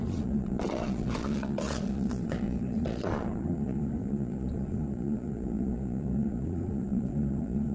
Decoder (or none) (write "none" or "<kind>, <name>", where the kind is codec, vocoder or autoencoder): vocoder, Vocos